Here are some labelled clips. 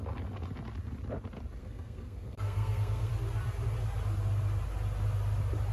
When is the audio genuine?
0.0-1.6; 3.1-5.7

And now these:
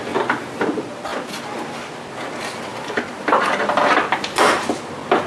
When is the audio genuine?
0.0-5.3

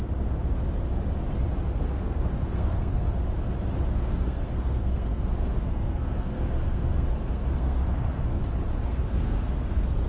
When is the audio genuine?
0.0-1.8; 3.1-3.9; 8.4-8.9

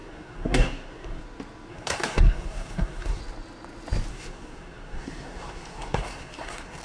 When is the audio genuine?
1.2-1.7; 3.2-4.1

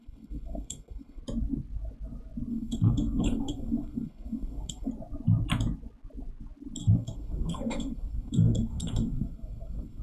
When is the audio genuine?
1.2-2.5; 4.9-6.8

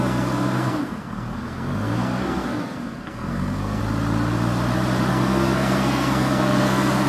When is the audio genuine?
3.8-5.1

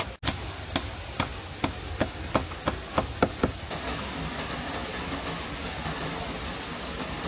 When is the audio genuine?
0.0-7.3